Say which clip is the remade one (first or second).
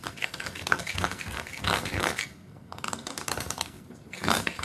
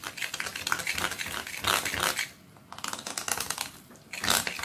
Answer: first